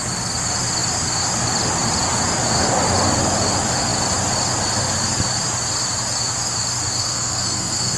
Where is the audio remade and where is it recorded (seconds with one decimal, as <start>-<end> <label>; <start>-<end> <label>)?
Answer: 0.0-7.0 recorded; 7.0-8.0 remade